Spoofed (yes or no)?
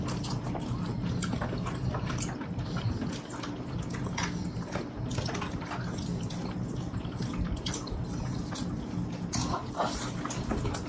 no